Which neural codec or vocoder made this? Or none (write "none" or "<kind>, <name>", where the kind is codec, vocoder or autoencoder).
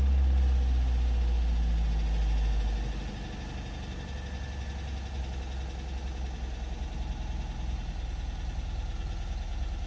none